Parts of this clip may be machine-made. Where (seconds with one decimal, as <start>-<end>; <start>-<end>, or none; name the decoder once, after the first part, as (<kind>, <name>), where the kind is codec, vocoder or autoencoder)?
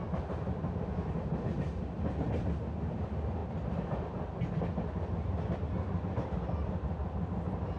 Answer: none